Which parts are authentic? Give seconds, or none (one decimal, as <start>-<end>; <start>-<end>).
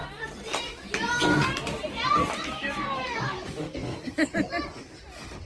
0.0-2.4; 4.3-5.5